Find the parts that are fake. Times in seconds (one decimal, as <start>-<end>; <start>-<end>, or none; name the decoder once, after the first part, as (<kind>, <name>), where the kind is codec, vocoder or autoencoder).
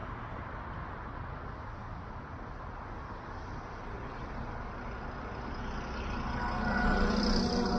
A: none